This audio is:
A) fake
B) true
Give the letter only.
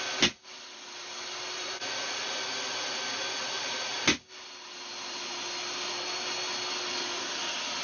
B